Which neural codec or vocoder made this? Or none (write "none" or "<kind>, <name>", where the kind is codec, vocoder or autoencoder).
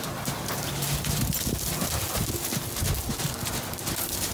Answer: none